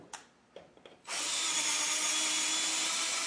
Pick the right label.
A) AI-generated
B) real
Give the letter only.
B